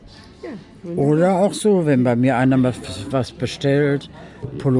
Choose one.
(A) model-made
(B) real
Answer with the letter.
B